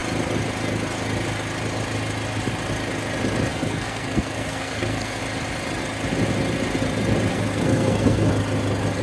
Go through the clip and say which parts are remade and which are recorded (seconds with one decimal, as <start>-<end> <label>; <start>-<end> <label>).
0.0-3.5 recorded; 3.5-5.2 remade; 5.2-7.3 recorded; 7.3-8.3 remade; 8.3-9.0 recorded